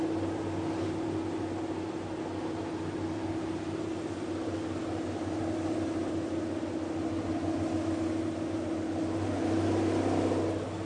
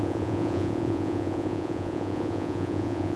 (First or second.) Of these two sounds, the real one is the first